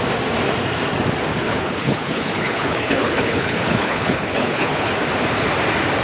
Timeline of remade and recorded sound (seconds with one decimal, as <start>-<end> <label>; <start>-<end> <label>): 0.0-1.3 recorded; 1.3-4.9 remade; 4.9-6.0 recorded